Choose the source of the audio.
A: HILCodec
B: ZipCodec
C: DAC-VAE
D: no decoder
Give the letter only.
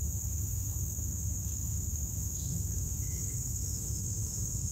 C